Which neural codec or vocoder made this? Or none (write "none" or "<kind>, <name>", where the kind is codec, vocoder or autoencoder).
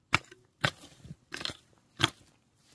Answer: none